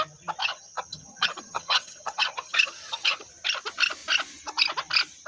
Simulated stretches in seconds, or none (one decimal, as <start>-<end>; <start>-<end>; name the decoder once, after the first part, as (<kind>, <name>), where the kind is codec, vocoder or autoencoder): 0.4-3.3 (vocoder, HiFi-GAN)